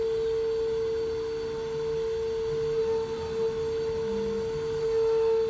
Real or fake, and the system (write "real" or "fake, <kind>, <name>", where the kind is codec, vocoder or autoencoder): real